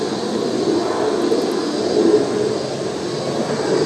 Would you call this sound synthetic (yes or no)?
no